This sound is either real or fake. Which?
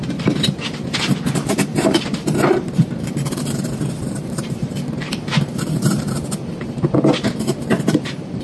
fake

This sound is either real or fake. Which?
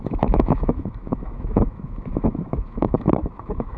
fake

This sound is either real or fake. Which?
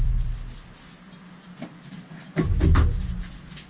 fake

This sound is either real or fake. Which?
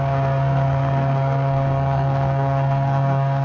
fake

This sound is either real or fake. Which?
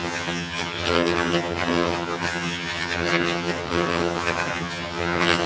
fake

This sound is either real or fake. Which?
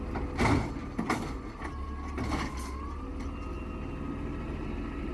real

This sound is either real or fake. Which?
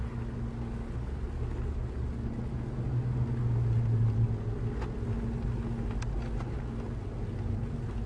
real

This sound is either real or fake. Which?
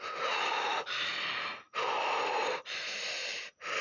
real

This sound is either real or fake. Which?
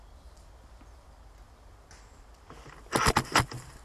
real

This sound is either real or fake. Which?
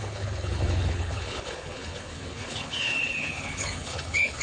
fake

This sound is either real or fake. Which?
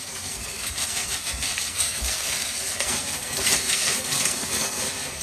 fake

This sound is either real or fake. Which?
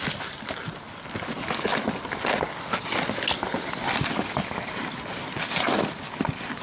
real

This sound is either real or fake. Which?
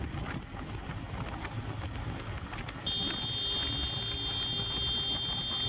real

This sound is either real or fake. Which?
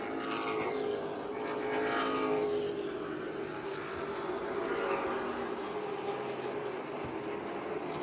real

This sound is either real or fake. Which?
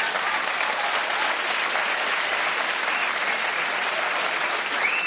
fake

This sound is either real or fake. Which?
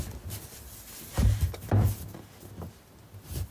real